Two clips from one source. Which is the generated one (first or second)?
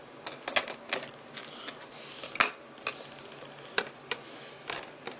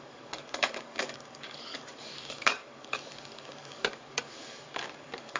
second